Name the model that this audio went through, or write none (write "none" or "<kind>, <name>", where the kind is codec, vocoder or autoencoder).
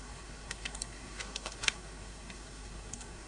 codec, SNAC